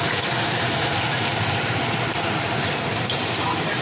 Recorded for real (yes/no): no